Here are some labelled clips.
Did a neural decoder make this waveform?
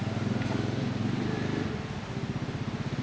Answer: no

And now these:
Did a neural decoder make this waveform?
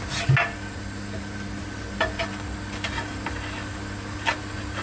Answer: no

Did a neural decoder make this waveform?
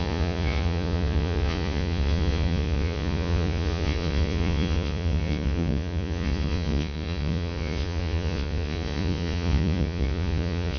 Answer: yes